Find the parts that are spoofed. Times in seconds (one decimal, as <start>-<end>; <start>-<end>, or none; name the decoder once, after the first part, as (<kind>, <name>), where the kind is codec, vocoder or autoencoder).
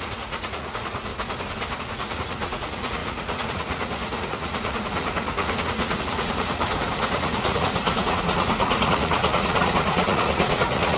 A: 0.0-1.1 (vocoder, Vocos); 1.8-11.0